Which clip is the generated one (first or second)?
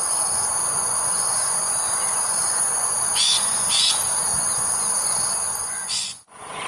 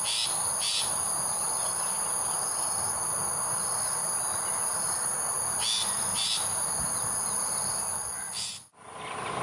first